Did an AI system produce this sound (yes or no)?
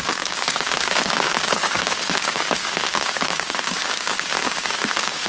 yes